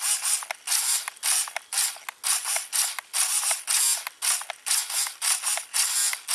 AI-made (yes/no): no